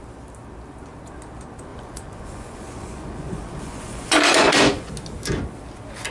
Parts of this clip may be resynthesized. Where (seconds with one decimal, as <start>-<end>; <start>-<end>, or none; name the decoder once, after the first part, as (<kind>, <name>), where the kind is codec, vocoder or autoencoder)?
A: 1.7-4.9 (vocoder, Vocos)